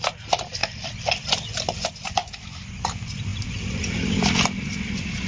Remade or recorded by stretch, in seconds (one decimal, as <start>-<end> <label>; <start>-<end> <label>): 0.0-5.3 recorded